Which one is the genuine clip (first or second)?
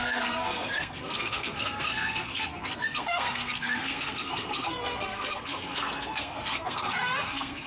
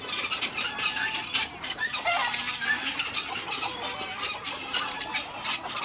second